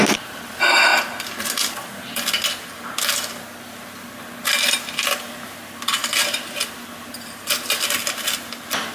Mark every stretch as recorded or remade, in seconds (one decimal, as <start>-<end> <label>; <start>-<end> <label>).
0.0-8.9 recorded